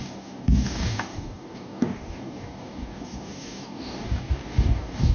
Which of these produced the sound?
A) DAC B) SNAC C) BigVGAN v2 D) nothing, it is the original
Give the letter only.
A